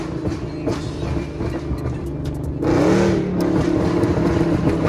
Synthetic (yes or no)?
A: no